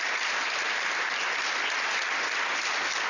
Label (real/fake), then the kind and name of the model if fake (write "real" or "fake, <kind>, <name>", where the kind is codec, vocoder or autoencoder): real